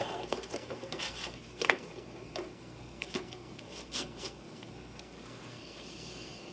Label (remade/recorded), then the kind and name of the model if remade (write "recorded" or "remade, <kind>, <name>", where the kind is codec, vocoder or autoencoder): remade, codec, SNAC